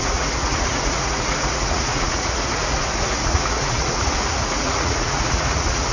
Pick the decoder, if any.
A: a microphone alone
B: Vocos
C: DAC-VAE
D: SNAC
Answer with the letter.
B